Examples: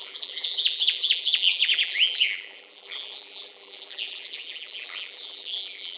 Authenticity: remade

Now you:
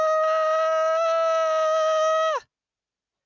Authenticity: recorded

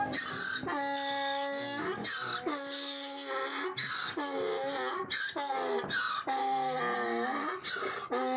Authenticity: recorded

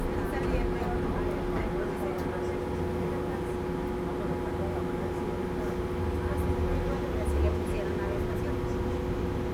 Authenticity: recorded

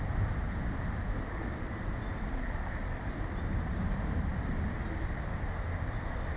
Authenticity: recorded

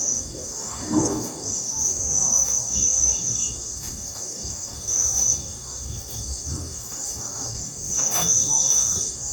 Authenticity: remade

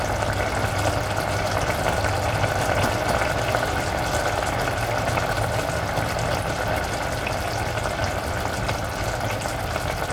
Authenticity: recorded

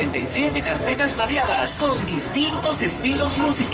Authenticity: remade